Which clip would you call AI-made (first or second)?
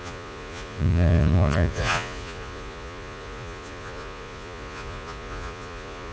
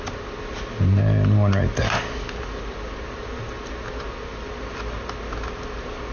first